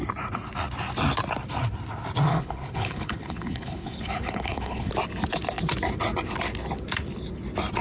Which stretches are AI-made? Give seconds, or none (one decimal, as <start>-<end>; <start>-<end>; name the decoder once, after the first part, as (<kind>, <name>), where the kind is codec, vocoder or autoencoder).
2.3-4.9 (codec, HILCodec)